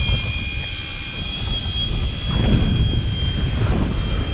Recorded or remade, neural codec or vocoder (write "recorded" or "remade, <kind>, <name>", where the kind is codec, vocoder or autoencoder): recorded